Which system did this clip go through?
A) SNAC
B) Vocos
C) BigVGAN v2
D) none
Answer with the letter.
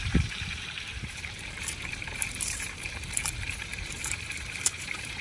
C